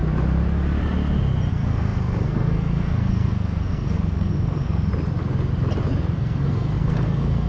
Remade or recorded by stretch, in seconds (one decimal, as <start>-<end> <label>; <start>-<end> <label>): 0.0-1.5 recorded; 1.5-4.9 remade; 4.9-6.1 recorded; 6.1-7.5 remade

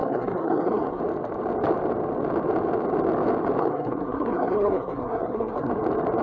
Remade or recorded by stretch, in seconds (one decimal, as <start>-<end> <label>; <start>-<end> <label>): 0.0-1.0 remade; 1.0-3.6 recorded; 3.6-5.7 remade; 5.7-6.2 recorded